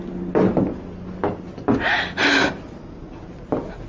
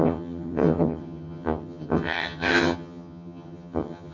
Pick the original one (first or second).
first